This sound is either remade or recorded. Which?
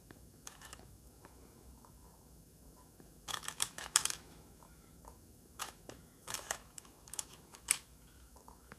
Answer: remade